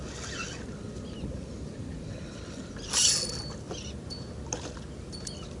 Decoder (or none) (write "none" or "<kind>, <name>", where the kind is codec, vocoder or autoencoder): none